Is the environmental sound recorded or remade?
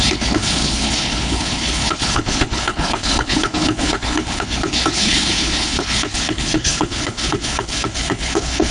remade